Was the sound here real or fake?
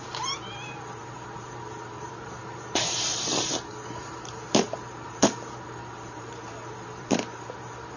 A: fake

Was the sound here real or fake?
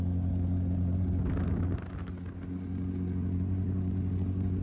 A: real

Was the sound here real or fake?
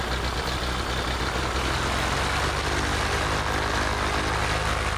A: real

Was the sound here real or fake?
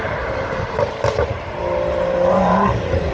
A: fake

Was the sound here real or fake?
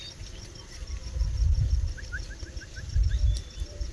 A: fake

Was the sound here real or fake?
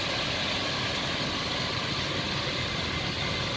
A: real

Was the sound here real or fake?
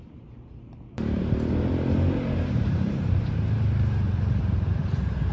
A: fake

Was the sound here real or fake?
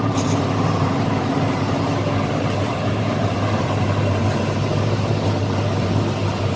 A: fake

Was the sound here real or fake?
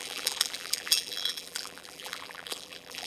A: fake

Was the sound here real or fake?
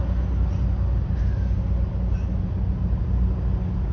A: real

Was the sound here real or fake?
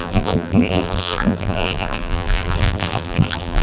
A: fake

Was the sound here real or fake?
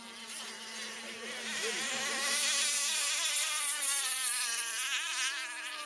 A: real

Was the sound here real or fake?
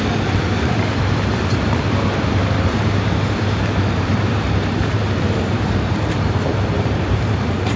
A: fake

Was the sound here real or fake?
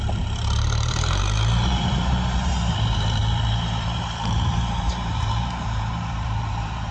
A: fake